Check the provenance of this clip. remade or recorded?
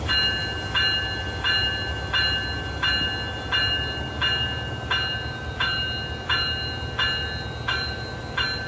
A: recorded